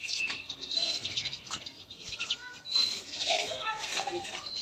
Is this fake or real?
fake